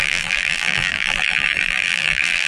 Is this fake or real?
fake